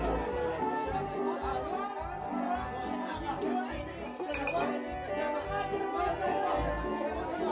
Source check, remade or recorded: recorded